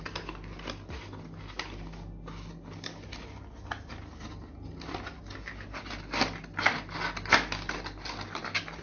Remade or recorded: recorded